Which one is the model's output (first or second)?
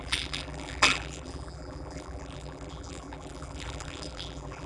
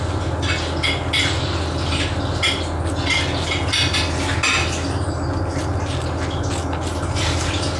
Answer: first